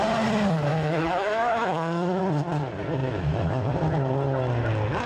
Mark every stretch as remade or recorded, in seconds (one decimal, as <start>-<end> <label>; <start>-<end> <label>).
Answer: 0.0-0.7 recorded; 0.7-2.2 remade; 2.2-3.0 recorded; 3.0-3.7 remade; 3.7-5.1 recorded